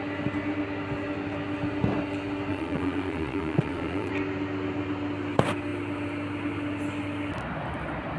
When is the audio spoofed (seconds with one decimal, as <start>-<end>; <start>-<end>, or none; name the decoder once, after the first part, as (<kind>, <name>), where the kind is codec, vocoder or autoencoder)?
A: 2.5-4.1 (vocoder, Vocos)